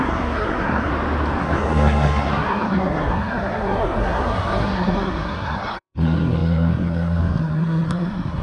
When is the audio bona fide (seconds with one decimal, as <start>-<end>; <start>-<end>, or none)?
0.9-1.4

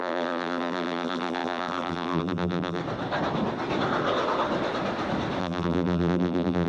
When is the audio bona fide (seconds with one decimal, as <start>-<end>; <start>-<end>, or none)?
2.8-5.4

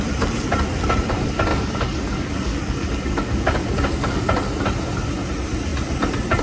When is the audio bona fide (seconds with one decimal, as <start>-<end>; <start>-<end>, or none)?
0.0-1.5; 4.2-6.4

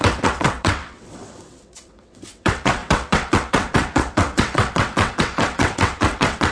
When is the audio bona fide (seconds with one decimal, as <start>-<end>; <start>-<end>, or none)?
none

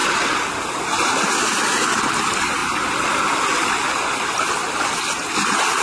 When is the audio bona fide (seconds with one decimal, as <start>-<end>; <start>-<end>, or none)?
0.0-2.2; 2.6-5.8

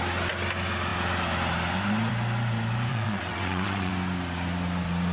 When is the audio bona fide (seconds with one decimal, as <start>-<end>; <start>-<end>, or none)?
0.0-2.9; 3.9-5.1

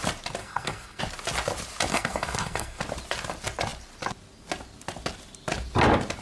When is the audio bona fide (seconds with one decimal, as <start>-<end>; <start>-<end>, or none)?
0.0-0.4; 1.0-1.9; 2.8-6.2